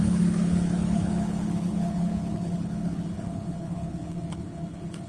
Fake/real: fake